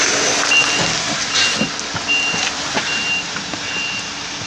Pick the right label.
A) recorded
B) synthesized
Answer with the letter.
A